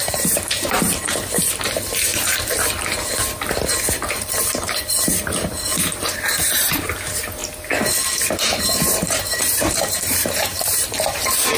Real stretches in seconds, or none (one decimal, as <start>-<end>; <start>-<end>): 2.1-3.8; 7.4-8.6